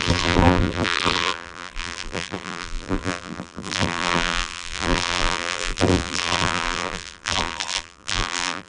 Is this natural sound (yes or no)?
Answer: no